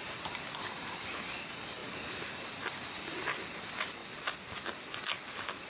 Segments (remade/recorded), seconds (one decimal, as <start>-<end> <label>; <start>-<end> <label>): 0.0-5.7 recorded